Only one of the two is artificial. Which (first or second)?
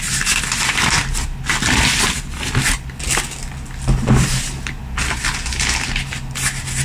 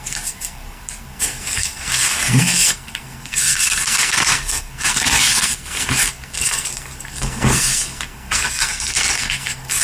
second